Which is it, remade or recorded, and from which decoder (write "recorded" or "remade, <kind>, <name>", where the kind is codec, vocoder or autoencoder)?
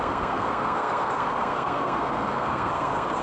remade, codec, SNAC